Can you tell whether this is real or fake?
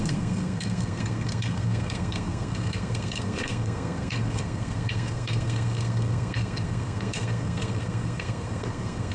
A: fake